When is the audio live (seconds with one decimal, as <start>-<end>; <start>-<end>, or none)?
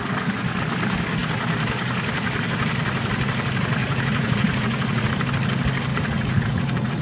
0.0-3.8; 5.1-5.9